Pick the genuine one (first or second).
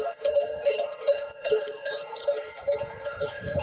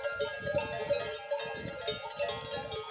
second